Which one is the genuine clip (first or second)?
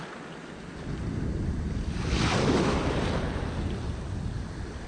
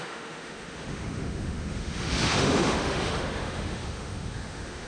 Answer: first